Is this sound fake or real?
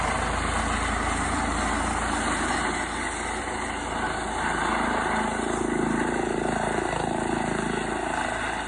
real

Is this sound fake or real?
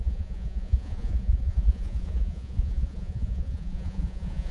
fake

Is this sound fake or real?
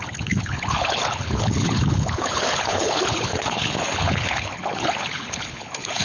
fake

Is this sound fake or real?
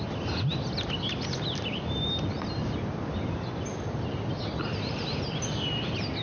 real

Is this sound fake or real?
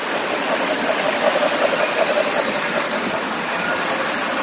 real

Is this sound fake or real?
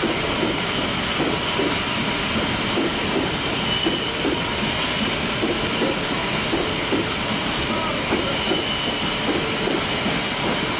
real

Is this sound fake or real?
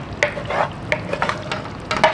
real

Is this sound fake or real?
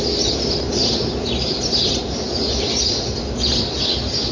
real